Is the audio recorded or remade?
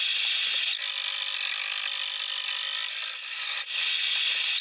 recorded